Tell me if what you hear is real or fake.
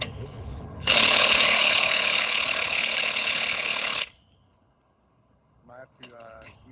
fake